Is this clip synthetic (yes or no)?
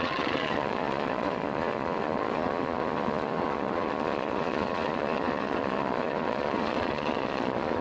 yes